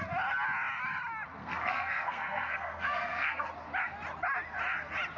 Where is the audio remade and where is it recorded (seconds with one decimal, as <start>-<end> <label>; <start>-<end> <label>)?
0.0-1.4 recorded; 1.4-3.5 remade; 3.5-5.2 recorded